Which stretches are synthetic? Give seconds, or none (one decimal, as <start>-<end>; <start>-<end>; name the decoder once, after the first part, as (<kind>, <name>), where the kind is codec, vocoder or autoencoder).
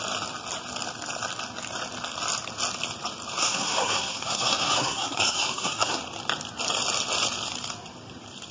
3.4-6.0 (codec, SNAC)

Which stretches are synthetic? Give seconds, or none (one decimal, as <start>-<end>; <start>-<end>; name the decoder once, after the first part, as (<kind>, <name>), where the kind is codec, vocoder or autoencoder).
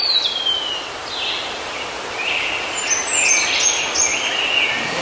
none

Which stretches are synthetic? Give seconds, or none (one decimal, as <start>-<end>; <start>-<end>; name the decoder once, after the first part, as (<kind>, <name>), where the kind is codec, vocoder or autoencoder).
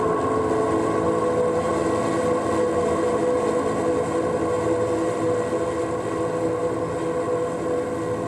none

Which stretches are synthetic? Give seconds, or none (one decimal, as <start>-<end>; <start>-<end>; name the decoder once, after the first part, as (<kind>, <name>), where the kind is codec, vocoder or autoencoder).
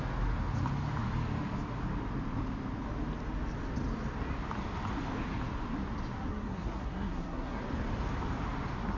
6.3-7.6 (codec, SNAC)